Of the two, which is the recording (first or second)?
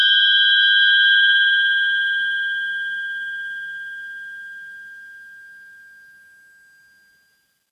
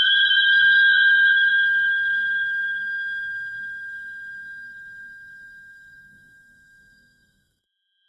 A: first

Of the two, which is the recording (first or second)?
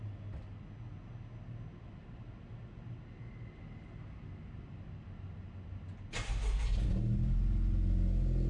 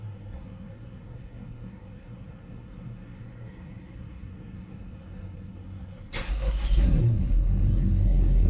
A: first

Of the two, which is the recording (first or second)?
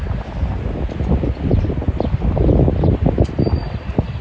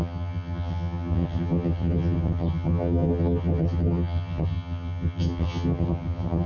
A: first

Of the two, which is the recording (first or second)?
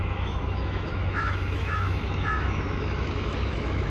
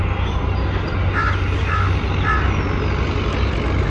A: second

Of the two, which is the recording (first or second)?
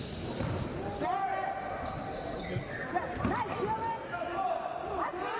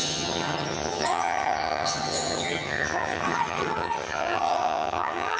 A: first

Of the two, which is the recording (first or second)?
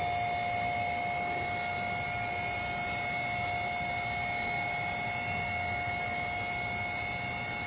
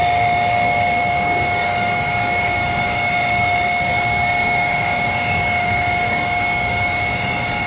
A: first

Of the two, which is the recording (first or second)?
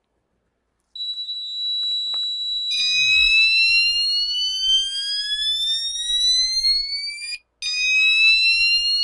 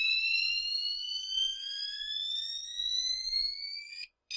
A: first